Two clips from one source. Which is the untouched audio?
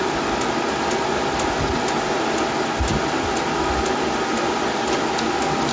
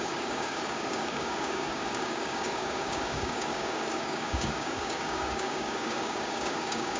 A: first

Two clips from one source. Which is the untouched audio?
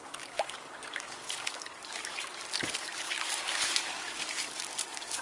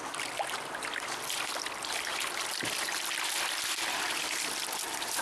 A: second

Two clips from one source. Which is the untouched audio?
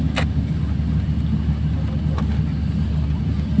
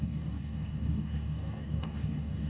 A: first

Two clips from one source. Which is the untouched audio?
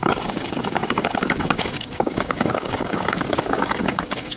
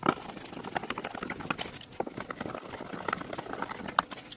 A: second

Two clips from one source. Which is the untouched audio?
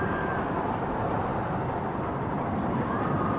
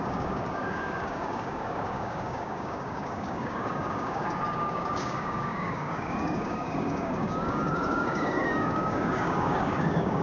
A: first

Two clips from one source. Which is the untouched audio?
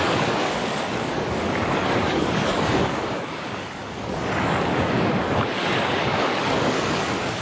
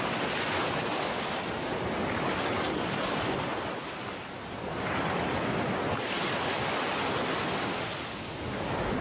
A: second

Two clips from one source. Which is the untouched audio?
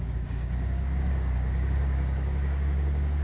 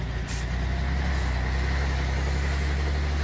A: second